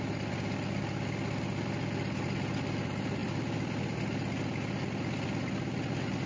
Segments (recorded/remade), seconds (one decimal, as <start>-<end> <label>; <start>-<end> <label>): 0.0-3.2 recorded; 3.2-4.0 remade; 4.0-6.3 recorded

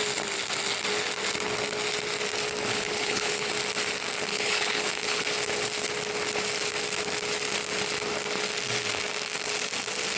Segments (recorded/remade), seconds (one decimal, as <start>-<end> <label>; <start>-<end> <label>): 0.0-2.7 recorded; 2.7-3.5 remade; 3.5-4.3 recorded; 4.3-5.2 remade; 5.2-10.2 recorded